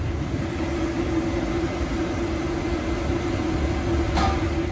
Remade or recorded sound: recorded